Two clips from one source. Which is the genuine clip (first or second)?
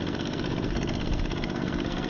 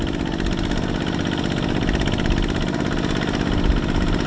second